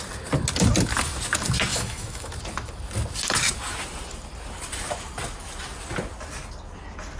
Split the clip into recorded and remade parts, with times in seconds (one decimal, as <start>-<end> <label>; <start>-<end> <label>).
0.0-1.7 recorded; 1.7-2.3 remade; 2.3-7.2 recorded